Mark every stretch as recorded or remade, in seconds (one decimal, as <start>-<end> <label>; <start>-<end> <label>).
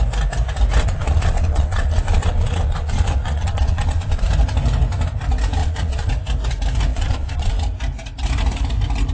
0.0-0.8 recorded; 0.8-4.3 remade; 4.3-5.6 recorded; 5.6-6.1 remade; 6.1-6.9 recorded; 6.9-7.5 remade; 7.5-9.1 recorded